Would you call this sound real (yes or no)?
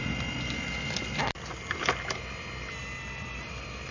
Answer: yes